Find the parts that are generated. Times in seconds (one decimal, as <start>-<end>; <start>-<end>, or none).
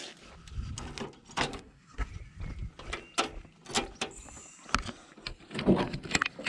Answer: 1.5-2.1